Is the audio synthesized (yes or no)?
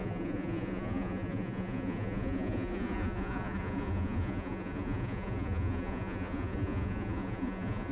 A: yes